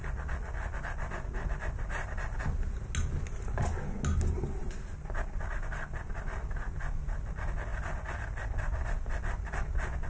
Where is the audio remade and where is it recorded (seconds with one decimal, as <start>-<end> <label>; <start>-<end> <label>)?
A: 0.0-10.1 recorded